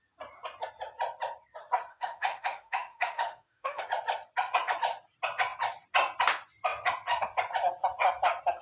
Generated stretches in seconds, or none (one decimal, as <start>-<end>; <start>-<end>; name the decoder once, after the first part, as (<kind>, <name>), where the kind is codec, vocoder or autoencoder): 1.9-3.8 (autoencoder, DAC-VAE)